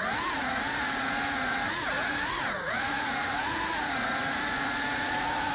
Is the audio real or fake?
fake